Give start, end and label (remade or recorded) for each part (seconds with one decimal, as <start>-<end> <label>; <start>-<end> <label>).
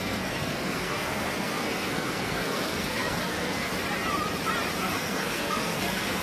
0.0-3.7 remade; 3.7-4.8 recorded; 4.8-6.2 remade